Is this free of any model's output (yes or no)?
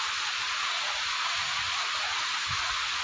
no